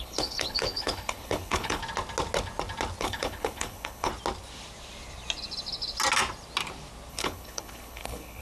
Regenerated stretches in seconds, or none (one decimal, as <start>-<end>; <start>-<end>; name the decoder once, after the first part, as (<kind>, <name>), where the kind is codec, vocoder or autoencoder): 0.0-1.8 (codec, HILCodec); 3.0-4.1; 7.1-8.4